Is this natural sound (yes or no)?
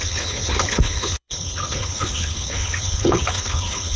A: no